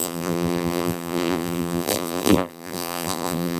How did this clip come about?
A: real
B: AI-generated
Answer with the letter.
B